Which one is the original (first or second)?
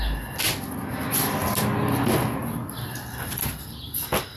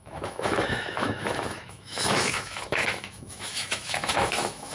first